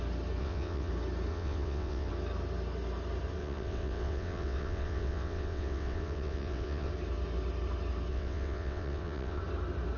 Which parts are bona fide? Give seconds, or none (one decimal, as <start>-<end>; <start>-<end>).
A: 0.0-0.4; 0.9-1.3; 2.1-3.4; 6.9-8.1; 9.4-10.0